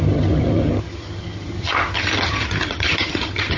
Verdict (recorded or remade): remade